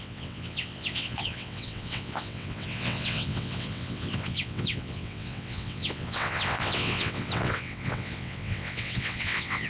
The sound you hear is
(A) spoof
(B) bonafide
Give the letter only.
A